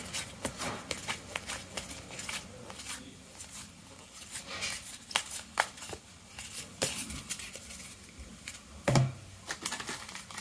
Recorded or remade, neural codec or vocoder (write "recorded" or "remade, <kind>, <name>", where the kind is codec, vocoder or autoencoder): recorded